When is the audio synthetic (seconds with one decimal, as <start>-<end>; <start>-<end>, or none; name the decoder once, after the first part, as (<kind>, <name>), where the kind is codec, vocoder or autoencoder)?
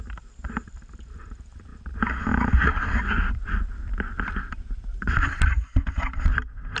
0.0-1.7 (vocoder, BigVGAN v2); 3.3-6.8